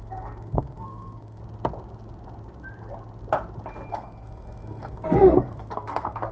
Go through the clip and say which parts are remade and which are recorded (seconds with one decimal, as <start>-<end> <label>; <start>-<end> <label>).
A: 0.0-1.4 remade; 1.4-3.9 recorded; 3.9-6.3 remade